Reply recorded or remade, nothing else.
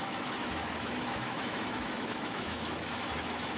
remade